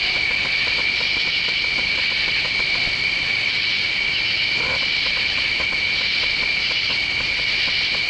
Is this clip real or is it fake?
real